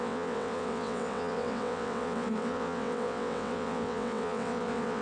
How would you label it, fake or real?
fake